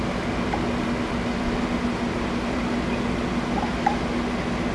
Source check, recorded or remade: recorded